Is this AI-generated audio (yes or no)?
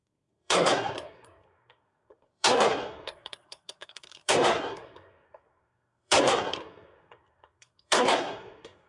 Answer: yes